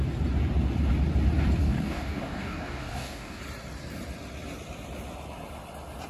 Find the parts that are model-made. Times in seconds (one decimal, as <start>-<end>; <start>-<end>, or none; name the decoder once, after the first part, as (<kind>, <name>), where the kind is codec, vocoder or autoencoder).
1.6-3.4 (codec, DAC)